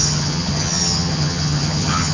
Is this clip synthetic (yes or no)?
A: yes